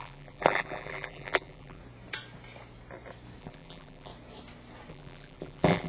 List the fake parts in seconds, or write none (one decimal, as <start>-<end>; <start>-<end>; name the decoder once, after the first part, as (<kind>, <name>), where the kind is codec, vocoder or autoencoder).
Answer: 0.0-1.8 (vocoder, BigVGAN v2); 3.4-4.1; 4.9-5.9